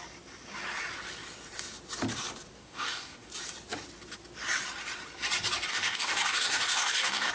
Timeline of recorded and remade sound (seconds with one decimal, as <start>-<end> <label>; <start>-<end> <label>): 0.0-2.6 recorded; 2.6-3.3 remade; 3.3-5.7 recorded; 5.7-7.3 remade

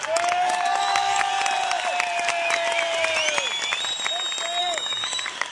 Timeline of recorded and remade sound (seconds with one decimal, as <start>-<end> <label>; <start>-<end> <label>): 0.0-1.3 remade; 1.3-4.6 recorded; 4.6-5.5 remade

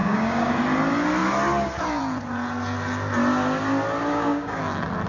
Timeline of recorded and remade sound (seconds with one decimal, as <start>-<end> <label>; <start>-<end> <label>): 0.0-0.5 remade; 0.5-4.1 recorded; 4.1-4.6 remade; 4.6-5.1 recorded